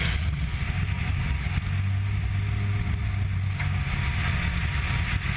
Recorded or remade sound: recorded